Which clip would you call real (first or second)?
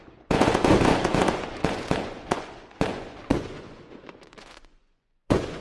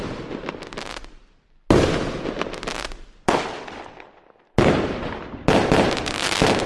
second